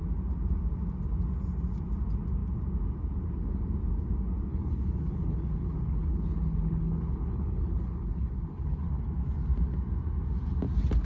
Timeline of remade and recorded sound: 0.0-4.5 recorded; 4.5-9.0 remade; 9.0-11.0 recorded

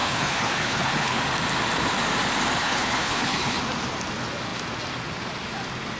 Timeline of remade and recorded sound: 0.0-1.2 remade; 1.2-2.6 recorded; 2.6-3.6 remade; 3.6-6.0 recorded

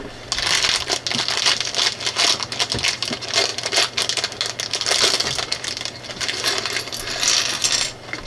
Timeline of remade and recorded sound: 0.0-8.3 recorded

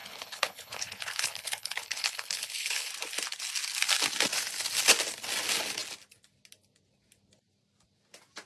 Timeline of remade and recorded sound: 0.0-2.9 remade; 2.9-8.5 recorded

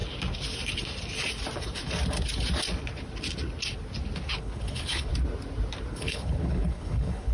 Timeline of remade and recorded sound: 0.0-4.4 recorded; 4.4-5.1 remade; 5.1-5.9 recorded; 5.9-7.3 remade